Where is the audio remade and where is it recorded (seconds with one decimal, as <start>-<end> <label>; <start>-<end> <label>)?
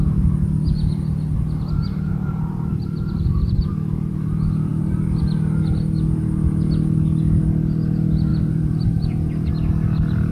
0.0-2.1 recorded; 2.1-3.7 remade; 3.7-4.7 recorded; 4.7-5.2 remade; 5.2-8.3 recorded; 8.3-9.5 remade; 9.5-10.3 recorded